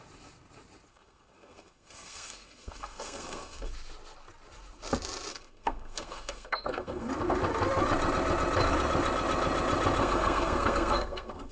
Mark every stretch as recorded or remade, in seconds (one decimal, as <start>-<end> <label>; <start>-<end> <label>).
0.0-0.9 recorded; 0.9-3.7 remade; 3.7-5.3 recorded; 5.3-7.1 remade; 7.1-10.0 recorded; 10.0-11.5 remade